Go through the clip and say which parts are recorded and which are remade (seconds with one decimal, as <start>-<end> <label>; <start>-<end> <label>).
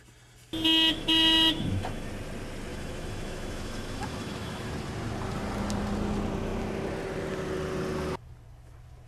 0.0-0.7 recorded; 0.7-2.1 remade; 2.1-2.7 recorded; 2.7-4.7 remade; 4.7-9.1 recorded